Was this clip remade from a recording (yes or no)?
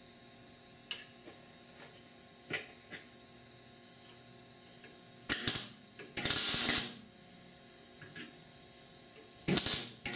no